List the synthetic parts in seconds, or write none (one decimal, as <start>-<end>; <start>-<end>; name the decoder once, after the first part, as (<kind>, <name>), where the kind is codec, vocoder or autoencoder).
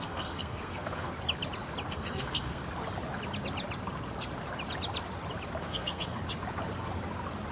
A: 0.0-1.1 (codec, SNAC); 1.9-2.6; 5.6-6.2